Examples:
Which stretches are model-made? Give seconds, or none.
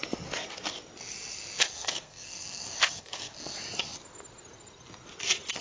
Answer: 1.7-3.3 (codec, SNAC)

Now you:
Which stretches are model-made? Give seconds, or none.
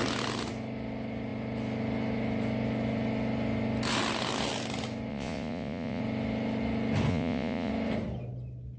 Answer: 5.1-6.0 (vocoder, Vocos); 7.1-7.7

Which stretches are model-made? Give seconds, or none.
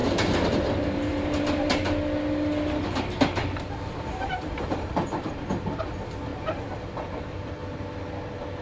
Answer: 0.0-1.7 (vocoder, BigVGAN v2); 4.2-5.5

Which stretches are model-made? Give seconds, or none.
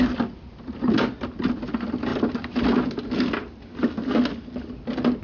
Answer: none